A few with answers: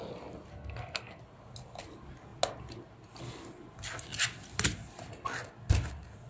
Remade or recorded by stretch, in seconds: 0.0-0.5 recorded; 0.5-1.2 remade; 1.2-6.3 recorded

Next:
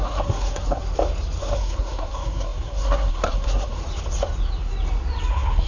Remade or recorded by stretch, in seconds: 0.0-0.8 remade; 0.8-1.4 recorded; 1.4-3.8 remade; 3.8-5.3 recorded; 5.3-5.7 remade

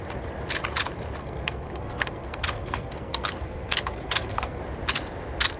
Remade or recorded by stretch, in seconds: 0.0-1.2 recorded; 1.2-4.6 remade; 4.6-5.6 recorded

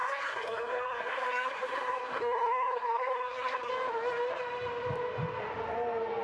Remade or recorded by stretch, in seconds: 0.0-3.7 remade; 3.7-6.2 recorded